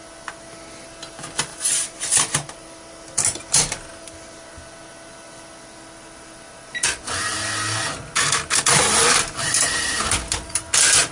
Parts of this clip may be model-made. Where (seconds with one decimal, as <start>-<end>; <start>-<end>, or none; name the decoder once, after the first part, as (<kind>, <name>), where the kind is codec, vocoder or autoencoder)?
1.5-2.0 (vocoder, BigVGAN v2); 9.0-9.6